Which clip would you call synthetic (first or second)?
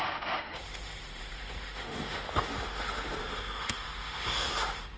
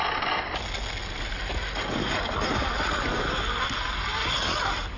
first